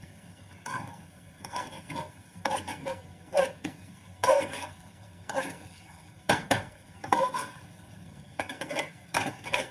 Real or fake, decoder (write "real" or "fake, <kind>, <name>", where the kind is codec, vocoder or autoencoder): fake, codec, SNAC